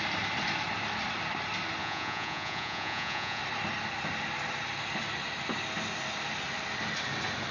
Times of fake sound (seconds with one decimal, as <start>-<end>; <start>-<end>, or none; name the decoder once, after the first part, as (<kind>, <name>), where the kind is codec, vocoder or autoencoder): 1.8-3.4 (vocoder, Vocos)